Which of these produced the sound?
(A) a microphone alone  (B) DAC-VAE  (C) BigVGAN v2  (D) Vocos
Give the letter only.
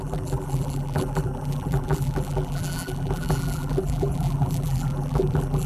C